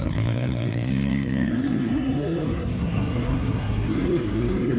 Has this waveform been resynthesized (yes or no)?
yes